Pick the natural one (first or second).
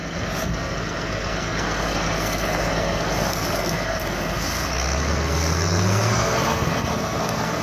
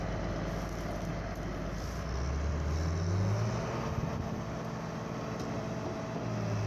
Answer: second